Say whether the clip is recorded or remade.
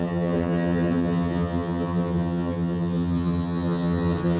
remade